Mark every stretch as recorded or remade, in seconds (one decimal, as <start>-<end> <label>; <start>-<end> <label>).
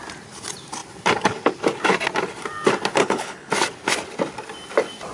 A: 0.0-3.0 recorded; 3.0-3.5 remade; 3.5-5.1 recorded